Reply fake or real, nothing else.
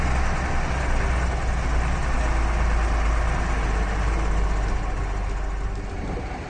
real